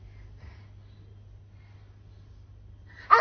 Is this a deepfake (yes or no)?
no